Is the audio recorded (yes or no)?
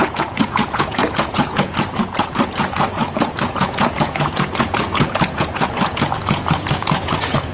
no